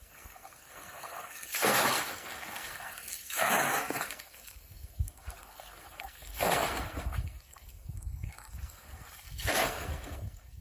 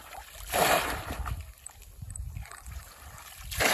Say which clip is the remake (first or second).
first